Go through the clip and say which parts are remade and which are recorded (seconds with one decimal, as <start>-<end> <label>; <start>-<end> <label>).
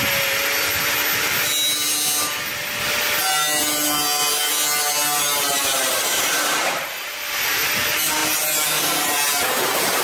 0.0-10.0 recorded